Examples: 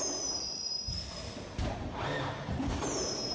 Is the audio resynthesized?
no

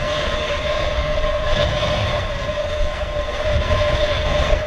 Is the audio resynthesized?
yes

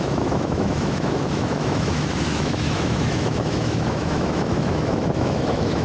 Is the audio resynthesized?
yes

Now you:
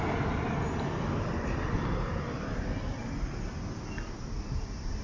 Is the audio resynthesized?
no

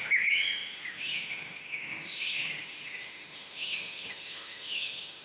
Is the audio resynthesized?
yes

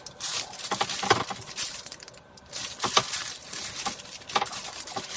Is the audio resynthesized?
yes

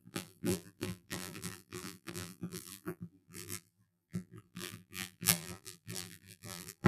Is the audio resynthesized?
yes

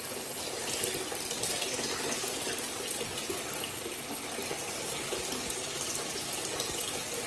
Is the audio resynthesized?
no